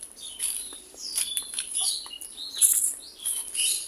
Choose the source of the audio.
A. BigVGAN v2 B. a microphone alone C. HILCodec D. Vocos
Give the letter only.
A